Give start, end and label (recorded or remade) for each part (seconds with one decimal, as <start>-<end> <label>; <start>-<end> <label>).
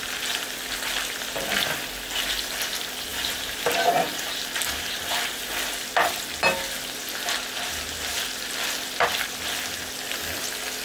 0.0-3.1 recorded; 3.1-5.6 remade; 5.6-10.8 recorded